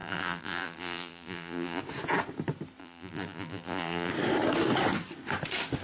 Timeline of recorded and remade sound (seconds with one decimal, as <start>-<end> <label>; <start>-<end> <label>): 0.0-1.8 remade; 1.8-2.8 recorded; 2.8-4.1 remade; 4.1-5.8 recorded